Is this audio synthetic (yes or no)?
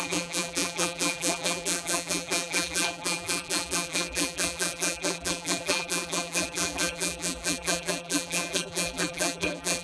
yes